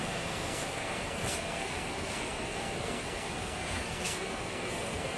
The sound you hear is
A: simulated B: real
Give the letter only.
A